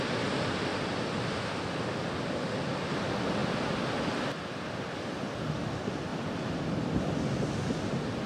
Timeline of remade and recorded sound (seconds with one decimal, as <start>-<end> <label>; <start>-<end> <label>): 0.0-0.7 recorded; 0.7-1.4 remade; 1.4-6.1 recorded; 6.1-6.7 remade; 6.7-8.3 recorded

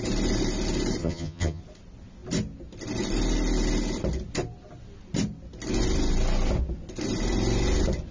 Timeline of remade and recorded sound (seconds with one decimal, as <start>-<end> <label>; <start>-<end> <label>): 0.0-1.0 recorded; 1.0-1.6 remade; 1.6-8.1 recorded

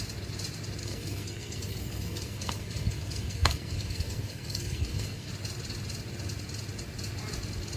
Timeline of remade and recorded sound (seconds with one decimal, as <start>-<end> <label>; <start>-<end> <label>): 0.0-0.8 recorded; 0.8-5.3 remade; 5.3-7.8 recorded

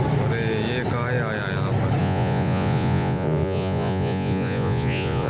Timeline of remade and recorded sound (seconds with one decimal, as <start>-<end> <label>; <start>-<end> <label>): 0.0-2.0 recorded; 2.0-5.3 remade

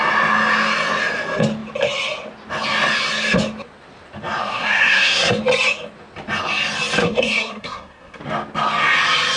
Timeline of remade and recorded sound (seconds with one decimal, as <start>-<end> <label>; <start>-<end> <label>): 0.0-4.4 recorded; 4.4-5.4 remade; 5.4-7.0 recorded; 7.0-8.2 remade; 8.2-9.4 recorded

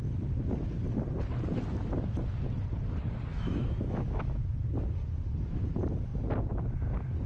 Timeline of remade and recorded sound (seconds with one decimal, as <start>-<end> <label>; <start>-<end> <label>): 0.0-3.3 recorded; 3.3-4.5 remade; 4.5-7.3 recorded

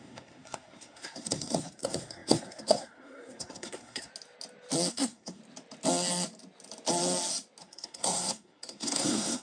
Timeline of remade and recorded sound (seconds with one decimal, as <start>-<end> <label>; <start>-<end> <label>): 0.0-4.1 remade; 4.1-4.9 recorded; 4.9-5.4 remade; 5.4-7.6 recorded; 7.6-9.4 remade

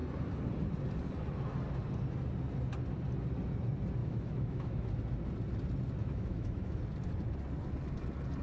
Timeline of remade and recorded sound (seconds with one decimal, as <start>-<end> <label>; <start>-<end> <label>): 0.0-4.0 recorded; 4.0-4.9 remade; 4.9-6.0 recorded; 6.0-6.8 remade; 6.8-8.4 recorded